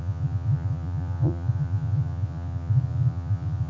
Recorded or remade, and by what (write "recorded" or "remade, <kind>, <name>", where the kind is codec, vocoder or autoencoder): remade, vocoder, Vocos